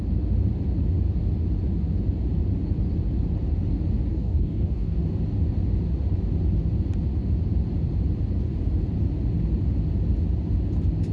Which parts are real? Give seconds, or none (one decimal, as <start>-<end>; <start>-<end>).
0.0-4.1; 5.0-11.1